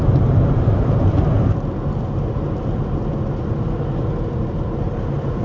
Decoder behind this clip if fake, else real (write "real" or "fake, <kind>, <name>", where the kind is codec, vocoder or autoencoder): real